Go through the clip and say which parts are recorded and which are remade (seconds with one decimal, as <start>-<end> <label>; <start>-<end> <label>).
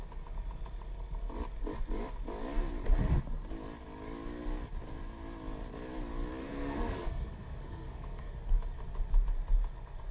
0.0-6.4 recorded; 6.4-8.3 remade; 8.3-10.1 recorded